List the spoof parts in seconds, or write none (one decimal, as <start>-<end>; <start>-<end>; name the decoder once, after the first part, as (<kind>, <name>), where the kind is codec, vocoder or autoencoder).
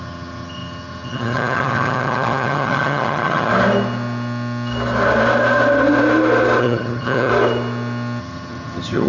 0.0-3.5 (vocoder, HiFi-GAN); 6.6-7.3; 8.2-9.1